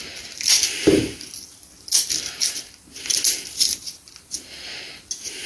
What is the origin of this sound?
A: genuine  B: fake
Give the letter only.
A